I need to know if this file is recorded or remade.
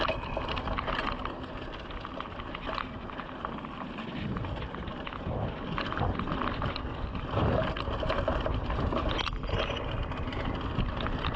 recorded